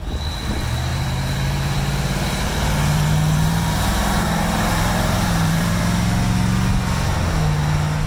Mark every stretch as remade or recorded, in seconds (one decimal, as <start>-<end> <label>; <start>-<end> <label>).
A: 0.0-0.9 recorded; 0.9-5.8 remade; 5.8-8.1 recorded